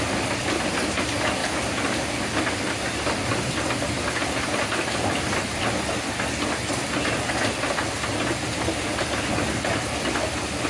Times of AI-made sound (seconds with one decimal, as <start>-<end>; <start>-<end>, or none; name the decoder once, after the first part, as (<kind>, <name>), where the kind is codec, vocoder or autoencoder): none